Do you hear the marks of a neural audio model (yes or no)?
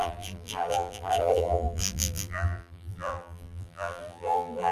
yes